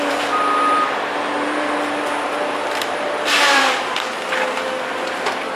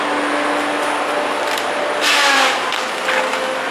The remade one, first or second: first